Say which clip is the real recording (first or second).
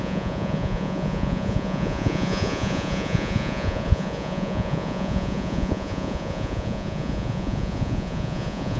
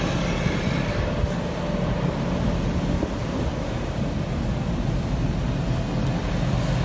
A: second